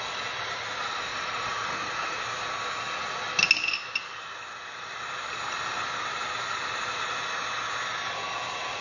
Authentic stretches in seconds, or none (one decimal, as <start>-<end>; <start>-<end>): 0.0-1.1; 2.2-8.8